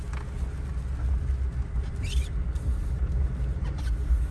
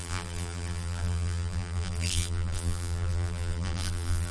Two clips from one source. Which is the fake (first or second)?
second